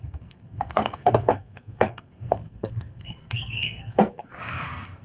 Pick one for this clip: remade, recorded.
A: remade